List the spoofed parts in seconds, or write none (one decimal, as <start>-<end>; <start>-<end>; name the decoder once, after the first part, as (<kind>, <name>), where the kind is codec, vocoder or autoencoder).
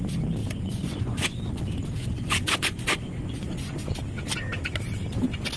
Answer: 0.4-1.6 (vocoder, Vocos); 2.0-4.0